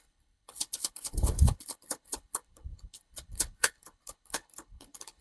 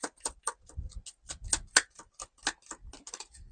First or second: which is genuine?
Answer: second